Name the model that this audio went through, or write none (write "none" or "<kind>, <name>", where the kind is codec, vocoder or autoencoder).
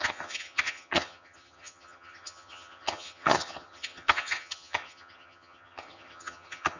vocoder, HiFi-GAN